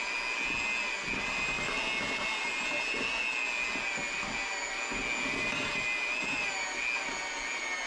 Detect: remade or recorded recorded